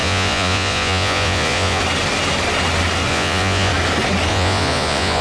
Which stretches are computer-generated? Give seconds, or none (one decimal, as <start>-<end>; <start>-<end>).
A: 0.0-1.8; 3.1-3.7; 4.3-5.2